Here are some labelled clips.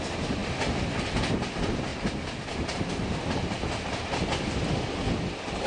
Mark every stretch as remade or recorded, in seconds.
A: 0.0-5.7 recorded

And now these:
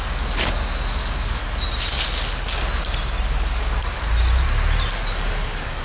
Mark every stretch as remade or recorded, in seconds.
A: 0.0-1.4 remade; 1.4-4.9 recorded; 4.9-5.8 remade

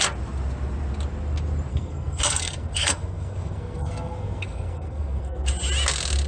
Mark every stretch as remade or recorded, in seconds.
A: 0.0-1.7 recorded; 1.7-5.5 remade; 5.5-6.3 recorded

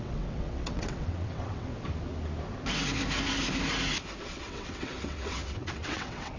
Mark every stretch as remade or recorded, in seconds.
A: 0.0-1.7 remade; 1.7-4.2 recorded; 4.2-6.4 remade

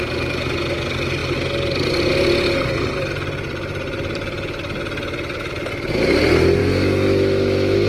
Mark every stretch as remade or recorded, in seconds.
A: 0.0-6.6 recorded; 6.6-7.9 remade